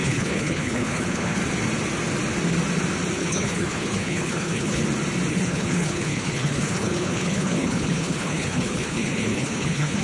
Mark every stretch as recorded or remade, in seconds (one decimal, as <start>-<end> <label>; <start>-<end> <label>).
0.0-1.4 remade; 1.4-3.2 recorded; 3.2-4.8 remade; 4.8-5.3 recorded; 5.3-10.0 remade